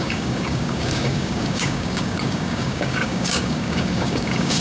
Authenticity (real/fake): fake